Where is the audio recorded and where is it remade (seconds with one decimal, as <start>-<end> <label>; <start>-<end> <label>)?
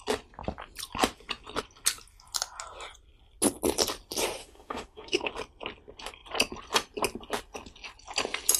0.0-4.4 recorded; 4.4-5.3 remade; 5.3-8.6 recorded